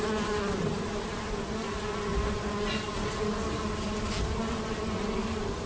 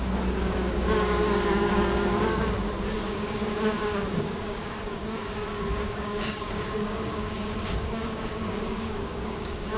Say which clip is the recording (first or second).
first